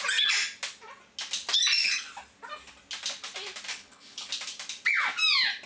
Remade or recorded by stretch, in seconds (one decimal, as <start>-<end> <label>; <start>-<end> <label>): 0.0-3.7 recorded; 3.7-4.3 remade; 4.3-5.7 recorded